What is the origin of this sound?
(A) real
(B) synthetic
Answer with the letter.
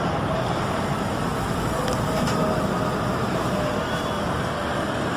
A